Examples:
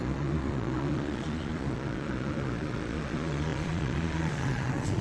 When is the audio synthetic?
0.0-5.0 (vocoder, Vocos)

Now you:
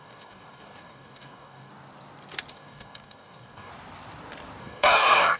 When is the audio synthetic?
0.0-1.7 (codec, DAC); 2.5-3.7; 4.6-5.4

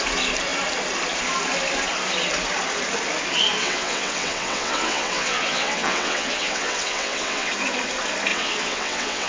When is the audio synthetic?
3.6-7.5 (vocoder, WaveNeXt); 8.3-9.3

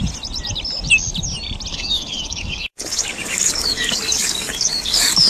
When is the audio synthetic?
1.7-5.3 (codec, DAC)